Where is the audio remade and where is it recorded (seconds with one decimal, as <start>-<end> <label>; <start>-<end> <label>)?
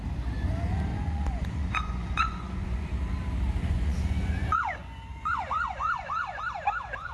0.0-0.9 recorded; 0.9-2.9 remade; 2.9-3.6 recorded; 3.6-6.4 remade; 6.4-7.1 recorded